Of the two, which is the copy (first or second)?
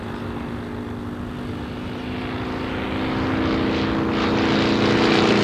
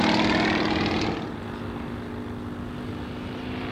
second